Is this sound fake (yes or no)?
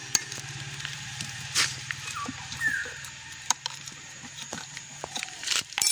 yes